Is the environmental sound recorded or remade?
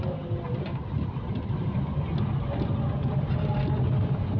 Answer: recorded